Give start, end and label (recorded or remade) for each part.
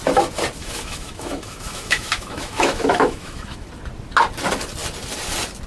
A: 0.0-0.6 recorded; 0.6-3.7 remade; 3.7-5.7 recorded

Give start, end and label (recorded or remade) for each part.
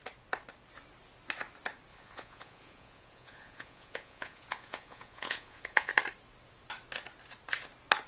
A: 0.0-1.9 recorded; 1.9-5.9 remade; 5.9-8.1 recorded